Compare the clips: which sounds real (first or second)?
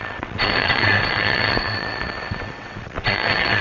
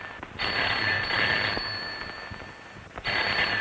second